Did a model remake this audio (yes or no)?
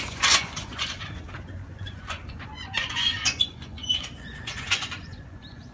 yes